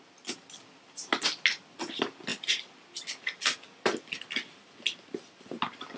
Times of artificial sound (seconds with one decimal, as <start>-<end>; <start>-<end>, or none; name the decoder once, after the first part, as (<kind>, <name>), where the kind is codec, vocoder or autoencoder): none

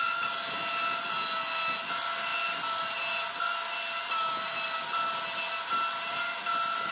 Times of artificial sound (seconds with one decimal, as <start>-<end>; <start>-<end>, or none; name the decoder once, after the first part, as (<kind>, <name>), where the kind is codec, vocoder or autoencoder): none

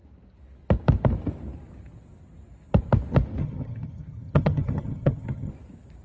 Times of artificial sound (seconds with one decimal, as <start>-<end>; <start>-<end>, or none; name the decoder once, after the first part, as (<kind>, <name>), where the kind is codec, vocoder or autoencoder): 3.4-5.5 (vocoder, HiFi-GAN)

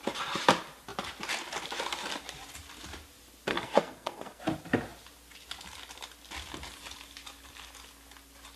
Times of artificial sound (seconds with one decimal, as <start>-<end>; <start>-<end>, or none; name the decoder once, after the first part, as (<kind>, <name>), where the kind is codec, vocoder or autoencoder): 3.5-4.4 (codec, SNAC)

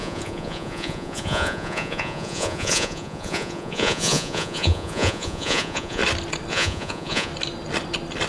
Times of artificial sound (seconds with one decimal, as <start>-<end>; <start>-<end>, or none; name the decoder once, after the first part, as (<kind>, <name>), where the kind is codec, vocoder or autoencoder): 0.0-6.0 (vocoder, Vocos); 6.5-7.3

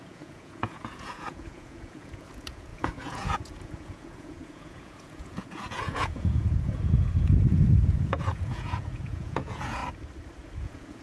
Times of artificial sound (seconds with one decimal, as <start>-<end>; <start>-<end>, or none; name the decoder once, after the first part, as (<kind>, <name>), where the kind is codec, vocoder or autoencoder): 0.0-9.8 (vocoder, Vocos); 10.6-11.0